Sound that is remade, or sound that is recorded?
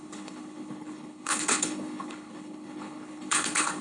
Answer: remade